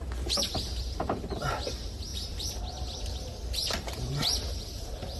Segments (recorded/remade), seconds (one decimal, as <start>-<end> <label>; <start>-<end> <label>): 0.0-5.2 remade